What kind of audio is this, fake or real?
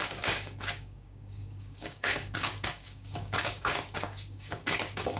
fake